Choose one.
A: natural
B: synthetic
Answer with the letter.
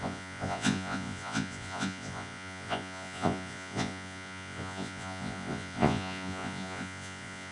B